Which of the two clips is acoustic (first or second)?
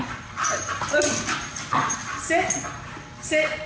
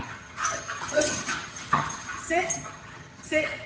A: first